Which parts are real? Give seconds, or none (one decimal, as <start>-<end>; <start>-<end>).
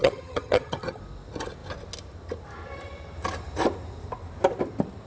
1.0-5.1